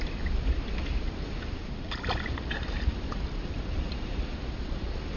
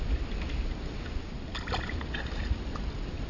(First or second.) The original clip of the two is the second